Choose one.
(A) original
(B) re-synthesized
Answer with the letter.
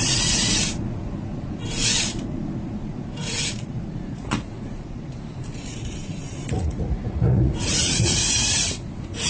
B